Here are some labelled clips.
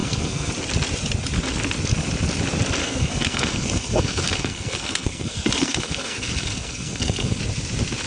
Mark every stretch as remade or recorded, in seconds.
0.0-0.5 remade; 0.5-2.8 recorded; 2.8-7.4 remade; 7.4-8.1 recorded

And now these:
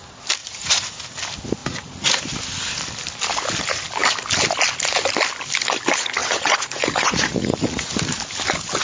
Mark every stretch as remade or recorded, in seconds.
0.0-0.4 recorded; 0.4-0.9 remade; 0.9-1.6 recorded; 1.6-2.2 remade; 2.2-6.2 recorded; 6.2-7.9 remade; 7.9-8.8 recorded

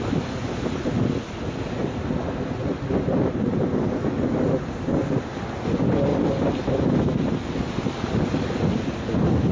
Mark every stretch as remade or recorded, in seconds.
0.0-9.5 recorded

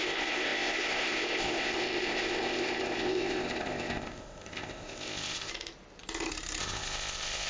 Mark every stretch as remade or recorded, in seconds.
0.0-5.5 remade; 5.5-6.6 recorded; 6.6-7.5 remade

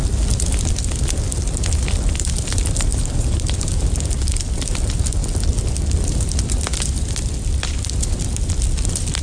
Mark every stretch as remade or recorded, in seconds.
0.0-2.9 recorded; 2.9-3.8 remade; 3.8-9.2 recorded

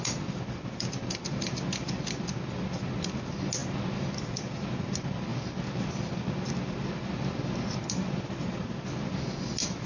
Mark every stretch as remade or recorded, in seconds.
0.0-9.9 recorded

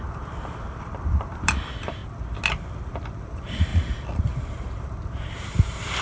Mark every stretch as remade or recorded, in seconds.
0.0-2.0 remade; 2.0-3.2 recorded; 3.2-3.7 remade; 3.7-4.4 recorded; 4.4-6.0 remade